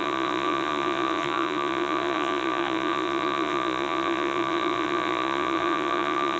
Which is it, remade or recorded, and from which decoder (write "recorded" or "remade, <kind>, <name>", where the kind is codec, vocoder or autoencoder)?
remade, vocoder, Vocos